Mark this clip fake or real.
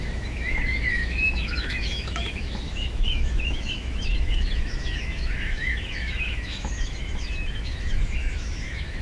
fake